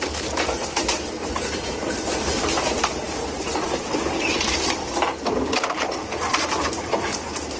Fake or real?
fake